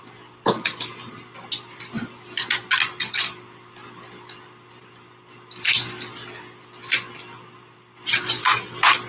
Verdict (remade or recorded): recorded